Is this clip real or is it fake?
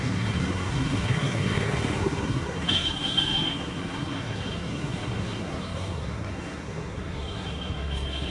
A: fake